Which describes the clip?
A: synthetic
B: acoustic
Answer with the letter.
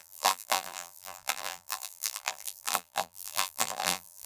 A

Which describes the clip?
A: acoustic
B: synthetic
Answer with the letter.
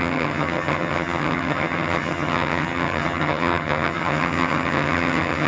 B